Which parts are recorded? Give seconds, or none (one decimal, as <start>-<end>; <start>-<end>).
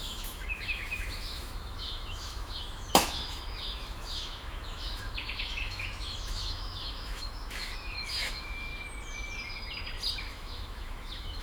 8.7-10.1